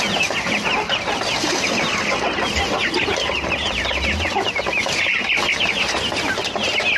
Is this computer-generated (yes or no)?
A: no